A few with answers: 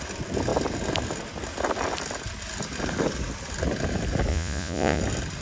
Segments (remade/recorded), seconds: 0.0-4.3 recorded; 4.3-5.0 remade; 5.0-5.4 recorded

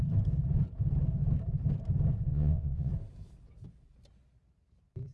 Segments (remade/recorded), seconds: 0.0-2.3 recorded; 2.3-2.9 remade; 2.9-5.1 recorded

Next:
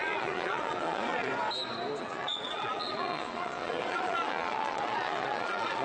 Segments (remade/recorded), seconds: 0.0-1.3 remade; 1.3-2.0 recorded; 2.0-5.8 remade

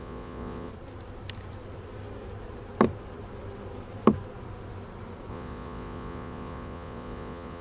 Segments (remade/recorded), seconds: 0.0-0.7 remade; 0.7-5.3 recorded; 5.3-7.6 remade

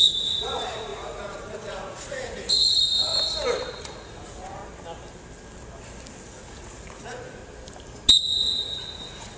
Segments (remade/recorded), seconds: 0.0-3.1 remade; 3.1-3.7 recorded; 3.7-4.6 remade; 4.6-6.2 recorded; 6.2-7.4 remade; 7.4-8.2 recorded; 8.2-9.4 remade